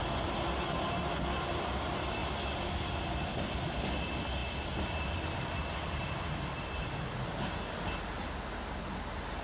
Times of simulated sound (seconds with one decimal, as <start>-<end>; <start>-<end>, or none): none